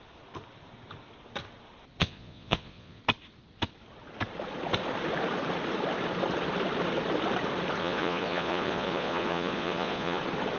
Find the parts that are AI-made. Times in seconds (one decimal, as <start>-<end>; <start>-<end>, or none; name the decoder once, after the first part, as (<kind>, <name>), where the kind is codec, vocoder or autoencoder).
2.0-3.0 (vocoder, Vocos); 7.8-10.2

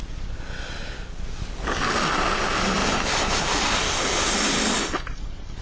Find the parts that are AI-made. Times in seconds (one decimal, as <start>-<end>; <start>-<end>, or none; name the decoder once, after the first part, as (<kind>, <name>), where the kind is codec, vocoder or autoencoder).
none

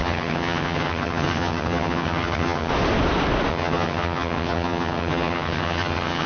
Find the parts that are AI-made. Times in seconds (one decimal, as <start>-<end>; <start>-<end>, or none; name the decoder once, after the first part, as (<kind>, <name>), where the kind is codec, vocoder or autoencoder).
0.0-2.7 (vocoder, HiFi-GAN); 3.5-6.3